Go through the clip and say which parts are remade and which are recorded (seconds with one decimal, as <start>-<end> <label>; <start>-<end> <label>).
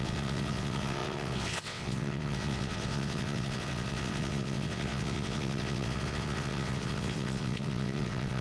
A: 0.0-8.4 remade